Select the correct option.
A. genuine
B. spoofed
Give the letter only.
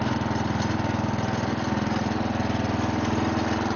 A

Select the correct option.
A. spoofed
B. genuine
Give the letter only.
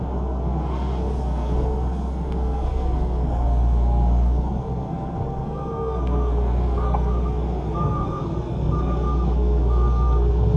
A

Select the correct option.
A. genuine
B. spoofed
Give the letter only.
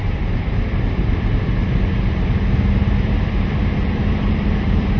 B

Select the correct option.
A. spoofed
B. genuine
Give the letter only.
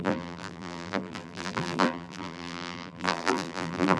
A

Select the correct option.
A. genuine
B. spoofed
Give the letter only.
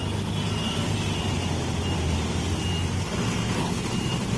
A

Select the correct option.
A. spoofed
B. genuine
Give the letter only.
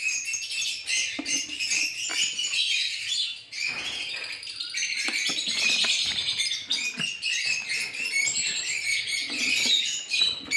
B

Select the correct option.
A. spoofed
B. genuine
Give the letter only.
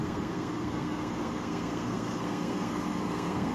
A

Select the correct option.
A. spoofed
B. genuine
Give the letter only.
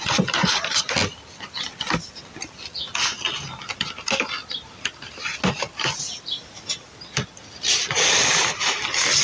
B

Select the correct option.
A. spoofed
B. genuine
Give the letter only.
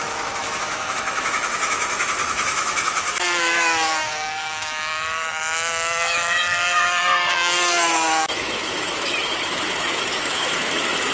A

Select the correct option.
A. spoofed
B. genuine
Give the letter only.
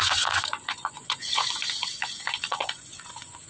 A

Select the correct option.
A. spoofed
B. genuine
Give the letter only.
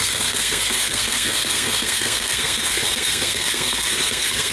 A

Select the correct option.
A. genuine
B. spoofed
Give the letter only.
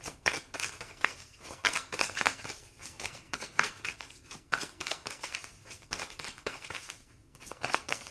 B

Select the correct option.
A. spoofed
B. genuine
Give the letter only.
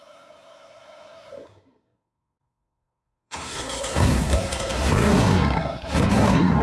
A